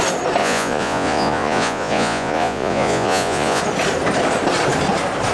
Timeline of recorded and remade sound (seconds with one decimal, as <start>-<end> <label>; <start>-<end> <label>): 0.0-0.4 recorded; 0.4-3.6 remade; 3.6-5.3 recorded